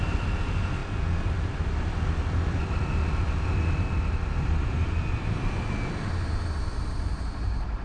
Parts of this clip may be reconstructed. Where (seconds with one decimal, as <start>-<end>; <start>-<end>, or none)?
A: none